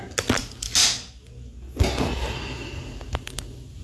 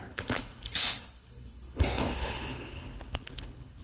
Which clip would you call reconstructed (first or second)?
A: second